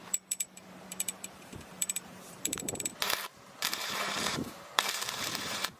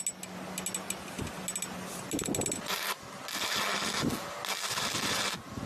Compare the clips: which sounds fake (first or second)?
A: first